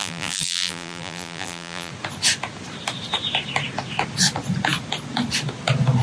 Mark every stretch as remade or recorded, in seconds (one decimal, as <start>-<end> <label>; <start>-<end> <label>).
0.0-1.9 remade; 1.9-6.0 recorded